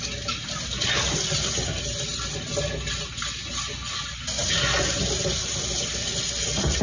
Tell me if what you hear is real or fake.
real